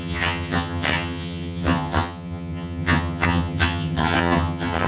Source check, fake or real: fake